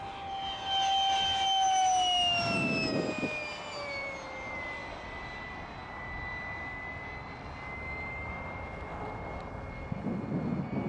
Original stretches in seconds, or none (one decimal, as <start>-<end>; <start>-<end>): 0.0-10.9